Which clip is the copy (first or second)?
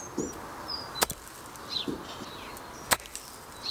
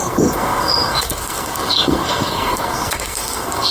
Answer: second